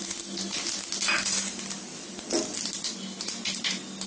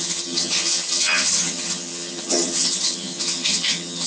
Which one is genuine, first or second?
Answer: first